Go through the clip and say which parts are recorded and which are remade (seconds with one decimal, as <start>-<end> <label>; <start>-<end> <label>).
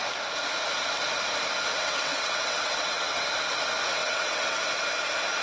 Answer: 0.0-1.7 recorded; 1.7-3.3 remade; 3.3-4.0 recorded; 4.0-4.6 remade; 4.6-5.4 recorded